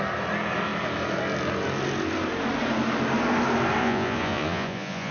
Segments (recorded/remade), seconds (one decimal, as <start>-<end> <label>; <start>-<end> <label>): 0.0-3.8 recorded; 3.8-5.1 remade